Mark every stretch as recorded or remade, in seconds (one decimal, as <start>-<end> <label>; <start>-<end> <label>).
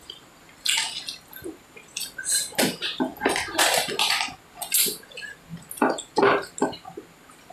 0.0-7.5 recorded